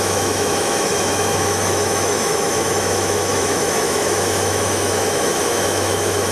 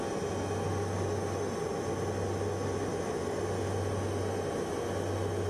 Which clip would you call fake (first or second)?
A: first